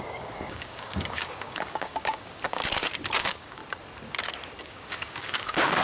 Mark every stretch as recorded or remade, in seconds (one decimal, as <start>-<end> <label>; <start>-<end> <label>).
0.0-2.6 remade; 2.6-3.1 recorded; 3.1-3.6 remade; 3.6-4.6 recorded; 4.6-5.8 remade